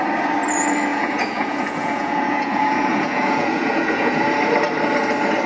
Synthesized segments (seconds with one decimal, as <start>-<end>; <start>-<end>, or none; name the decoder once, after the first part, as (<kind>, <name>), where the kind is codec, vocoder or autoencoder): 0.9-4.2 (vocoder, Vocos)